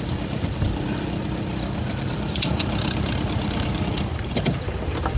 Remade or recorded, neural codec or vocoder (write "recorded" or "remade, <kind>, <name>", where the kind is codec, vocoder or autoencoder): remade, vocoder, BigVGAN v2